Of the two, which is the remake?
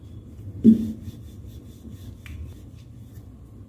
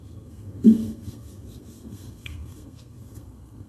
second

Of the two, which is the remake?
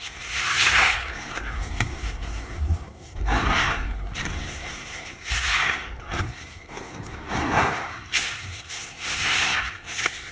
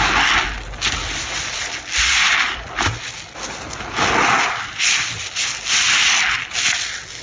first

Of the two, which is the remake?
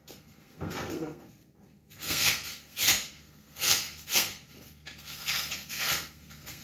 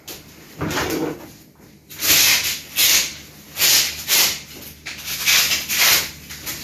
first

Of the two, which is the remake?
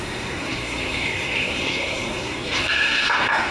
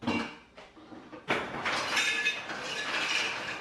first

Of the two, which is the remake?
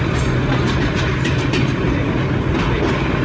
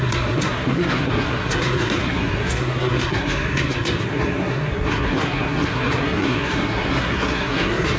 second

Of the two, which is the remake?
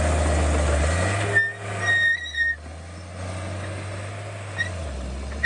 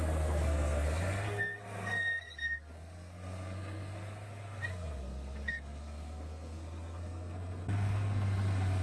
second